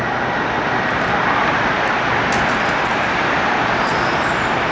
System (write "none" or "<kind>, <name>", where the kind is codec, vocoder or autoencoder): vocoder, BigVGAN v2